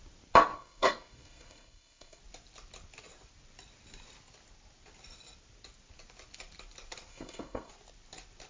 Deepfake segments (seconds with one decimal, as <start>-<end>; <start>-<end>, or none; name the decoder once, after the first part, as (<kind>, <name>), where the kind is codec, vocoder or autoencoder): 0.5-2.2 (codec, SNAC); 7.1-7.7